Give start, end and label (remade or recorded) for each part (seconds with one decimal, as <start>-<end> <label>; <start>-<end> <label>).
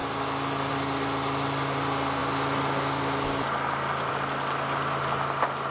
0.0-5.7 recorded